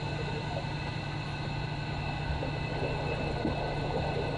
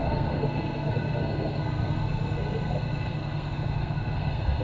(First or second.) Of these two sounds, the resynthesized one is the second